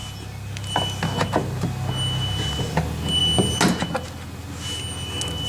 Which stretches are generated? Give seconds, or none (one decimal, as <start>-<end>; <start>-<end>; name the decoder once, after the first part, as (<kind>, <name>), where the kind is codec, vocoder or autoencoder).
none